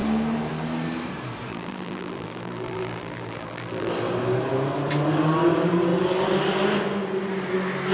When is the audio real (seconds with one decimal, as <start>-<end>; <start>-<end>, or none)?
0.0-1.5; 3.9-7.9